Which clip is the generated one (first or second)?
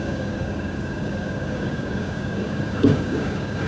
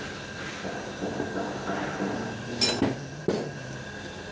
first